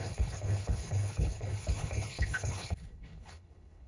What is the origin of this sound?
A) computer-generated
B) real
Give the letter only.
A